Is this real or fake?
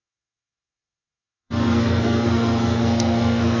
fake